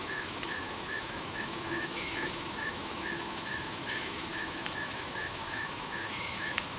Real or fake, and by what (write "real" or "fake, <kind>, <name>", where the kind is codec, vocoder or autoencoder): fake, autoencoder, DAC-VAE